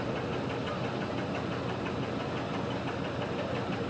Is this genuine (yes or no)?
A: yes